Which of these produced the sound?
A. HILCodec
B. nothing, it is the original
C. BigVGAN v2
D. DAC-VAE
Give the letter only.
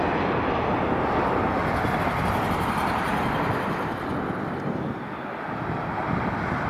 B